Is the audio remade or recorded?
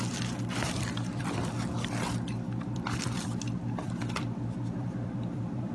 remade